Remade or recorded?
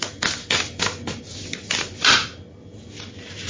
recorded